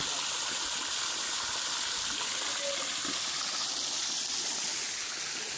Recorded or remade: recorded